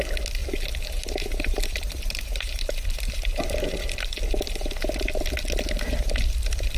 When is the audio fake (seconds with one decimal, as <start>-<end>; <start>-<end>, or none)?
0.4-3.5